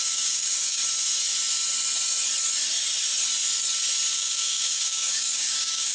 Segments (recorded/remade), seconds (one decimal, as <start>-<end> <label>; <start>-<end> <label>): 0.0-0.8 remade; 0.8-4.1 recorded; 4.1-5.9 remade